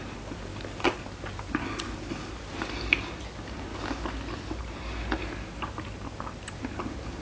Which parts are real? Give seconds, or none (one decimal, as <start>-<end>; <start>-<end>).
0.0-7.2